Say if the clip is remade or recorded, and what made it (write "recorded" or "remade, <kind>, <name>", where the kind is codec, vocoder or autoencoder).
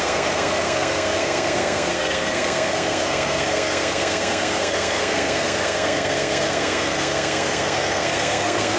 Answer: remade, codec, SNAC